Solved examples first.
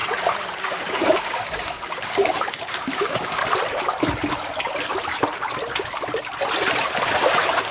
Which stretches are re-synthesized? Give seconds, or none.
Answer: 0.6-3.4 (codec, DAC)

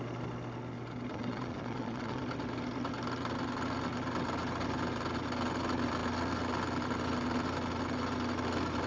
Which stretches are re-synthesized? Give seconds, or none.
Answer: 1.1-2.2 (vocoder, Vocos)

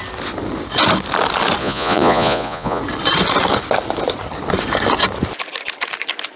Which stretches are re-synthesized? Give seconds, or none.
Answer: 1.6-2.8 (vocoder, Vocos)

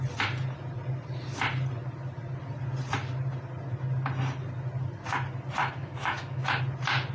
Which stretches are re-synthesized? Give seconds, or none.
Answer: 5.6-6.6 (autoencoder, DAC-VAE)

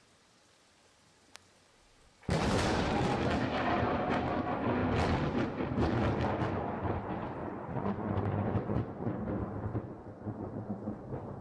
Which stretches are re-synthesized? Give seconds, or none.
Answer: 7.4-9.1 (vocoder, Vocos); 9.7-11.0

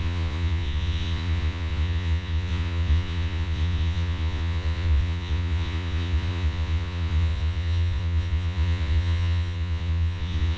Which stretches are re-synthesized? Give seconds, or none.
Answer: 0.0-10.6 (vocoder, Vocos)

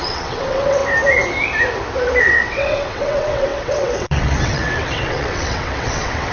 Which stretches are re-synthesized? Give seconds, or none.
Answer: 0.0-0.8 (vocoder, WaveNeXt); 2.2-6.3